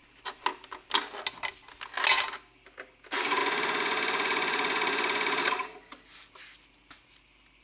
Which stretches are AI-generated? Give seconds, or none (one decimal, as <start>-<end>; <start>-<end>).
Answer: 3.4-5.4